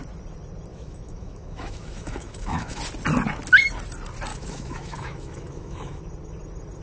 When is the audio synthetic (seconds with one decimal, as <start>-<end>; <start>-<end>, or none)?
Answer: 0.7-2.8; 4.3-6.0